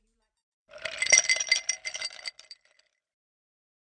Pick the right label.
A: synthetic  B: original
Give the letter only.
A